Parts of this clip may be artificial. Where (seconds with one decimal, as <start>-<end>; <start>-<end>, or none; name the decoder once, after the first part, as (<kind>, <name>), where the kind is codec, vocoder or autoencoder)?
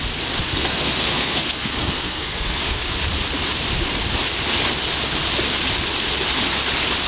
0.5-2.8 (codec, SNAC)